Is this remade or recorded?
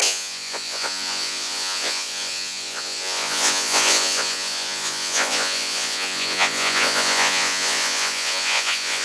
remade